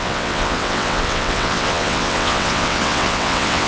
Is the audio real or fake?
fake